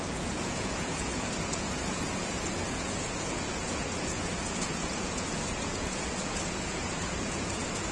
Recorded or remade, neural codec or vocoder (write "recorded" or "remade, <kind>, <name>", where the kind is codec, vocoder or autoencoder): remade, vocoder, Vocos